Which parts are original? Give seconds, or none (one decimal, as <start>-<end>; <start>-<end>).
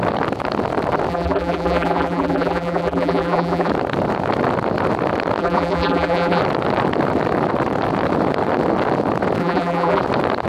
0.0-1.1; 3.7-5.4; 6.4-9.4; 10.0-10.5